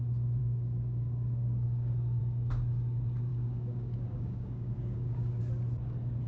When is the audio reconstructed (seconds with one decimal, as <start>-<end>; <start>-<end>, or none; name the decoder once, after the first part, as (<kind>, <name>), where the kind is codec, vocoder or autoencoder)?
0.4-2.2 (codec, DAC); 3.3-5.4